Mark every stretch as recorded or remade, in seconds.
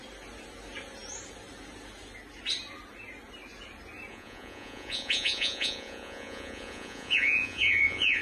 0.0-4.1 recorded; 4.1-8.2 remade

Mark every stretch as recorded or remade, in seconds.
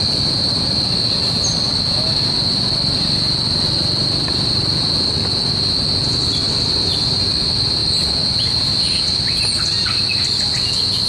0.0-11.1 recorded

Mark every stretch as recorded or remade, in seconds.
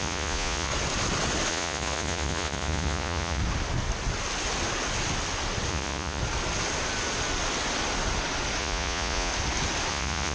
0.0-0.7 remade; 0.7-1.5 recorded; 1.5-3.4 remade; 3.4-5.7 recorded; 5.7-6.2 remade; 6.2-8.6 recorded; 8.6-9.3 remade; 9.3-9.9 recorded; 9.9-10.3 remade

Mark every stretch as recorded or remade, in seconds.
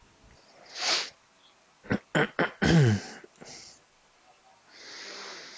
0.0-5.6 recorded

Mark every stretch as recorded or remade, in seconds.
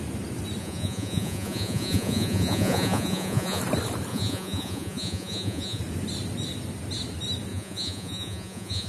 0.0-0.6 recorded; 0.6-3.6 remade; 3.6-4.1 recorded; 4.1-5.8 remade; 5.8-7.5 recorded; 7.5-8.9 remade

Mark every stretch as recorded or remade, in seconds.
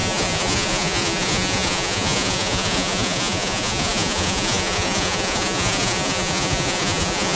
0.0-7.4 remade